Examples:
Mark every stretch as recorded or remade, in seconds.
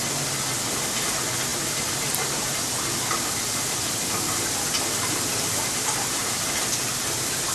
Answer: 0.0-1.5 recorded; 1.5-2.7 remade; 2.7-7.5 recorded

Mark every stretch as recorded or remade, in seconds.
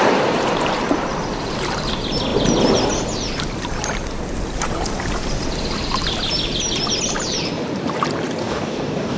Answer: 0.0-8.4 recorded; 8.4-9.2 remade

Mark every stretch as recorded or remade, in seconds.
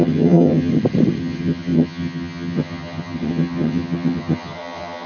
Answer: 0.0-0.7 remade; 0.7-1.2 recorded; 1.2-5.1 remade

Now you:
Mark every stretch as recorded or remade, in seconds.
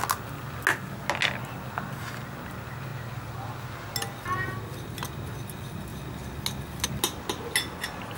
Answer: 0.0-8.2 recorded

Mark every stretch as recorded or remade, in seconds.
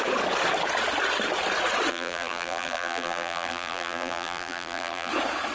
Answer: 0.0-1.9 recorded; 1.9-5.1 remade; 5.1-5.5 recorded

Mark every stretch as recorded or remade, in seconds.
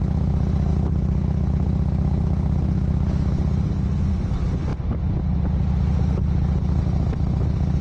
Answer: 0.0-7.8 recorded